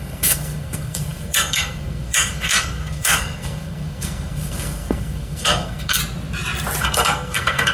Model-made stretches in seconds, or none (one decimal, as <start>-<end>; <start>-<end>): 0.0-6.0; 6.8-7.7